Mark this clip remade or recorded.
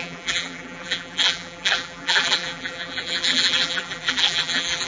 remade